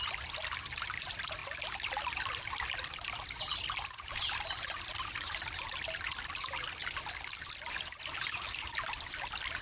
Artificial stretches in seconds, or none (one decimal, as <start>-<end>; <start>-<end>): 1.4-4.2; 6.8-8.1